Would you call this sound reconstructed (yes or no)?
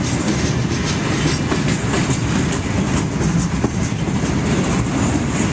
no